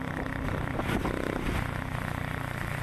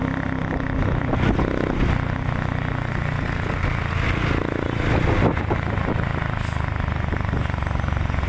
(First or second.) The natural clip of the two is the second